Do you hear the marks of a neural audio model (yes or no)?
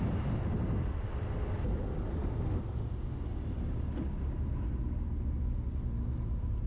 no